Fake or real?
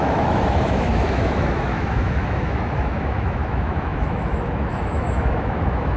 fake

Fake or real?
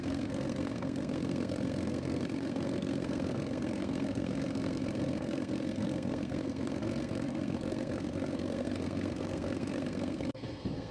fake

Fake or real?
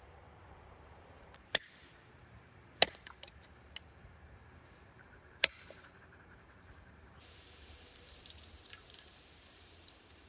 fake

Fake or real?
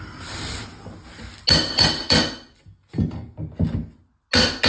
real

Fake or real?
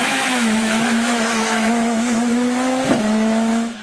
fake